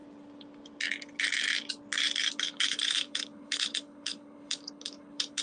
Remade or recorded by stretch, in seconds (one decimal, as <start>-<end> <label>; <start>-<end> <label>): 0.0-2.3 recorded; 2.3-5.4 remade